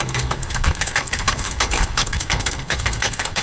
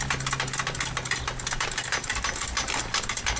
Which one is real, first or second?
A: second